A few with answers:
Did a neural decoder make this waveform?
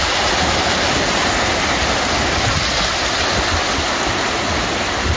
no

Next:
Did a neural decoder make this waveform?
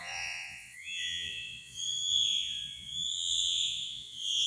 yes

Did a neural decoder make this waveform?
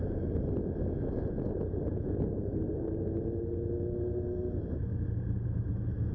no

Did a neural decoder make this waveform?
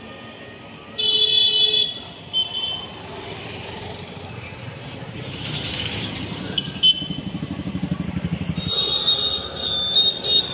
no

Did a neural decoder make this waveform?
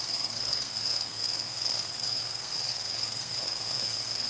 yes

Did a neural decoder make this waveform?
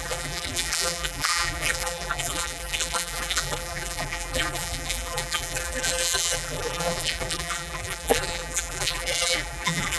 yes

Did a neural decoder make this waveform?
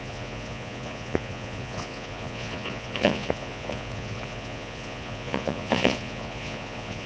yes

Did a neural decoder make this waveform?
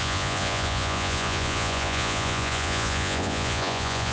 yes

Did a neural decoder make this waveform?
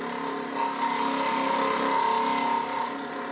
no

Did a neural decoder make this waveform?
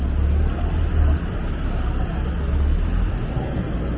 no